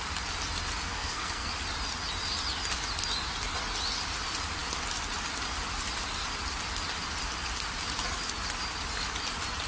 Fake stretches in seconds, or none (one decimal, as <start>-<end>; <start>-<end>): 0.9-1.5